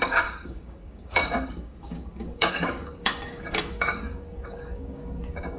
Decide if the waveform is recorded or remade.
remade